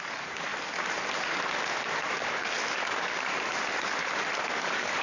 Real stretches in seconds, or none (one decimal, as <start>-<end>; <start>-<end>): 0.5-1.8; 3.5-4.4